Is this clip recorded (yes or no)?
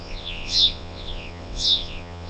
no